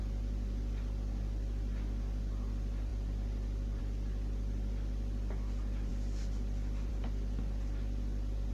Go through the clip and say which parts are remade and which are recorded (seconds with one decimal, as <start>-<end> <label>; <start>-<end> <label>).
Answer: 0.0-8.5 recorded